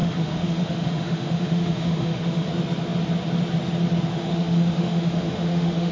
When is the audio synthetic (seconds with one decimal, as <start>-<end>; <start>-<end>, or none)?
0.0-2.5; 4.1-5.9